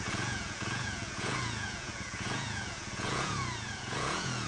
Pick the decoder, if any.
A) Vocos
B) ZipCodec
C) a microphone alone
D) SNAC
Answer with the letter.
A